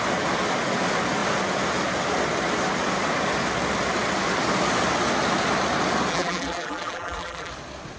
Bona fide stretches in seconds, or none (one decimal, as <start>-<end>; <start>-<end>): 0.0-6.1; 7.5-8.0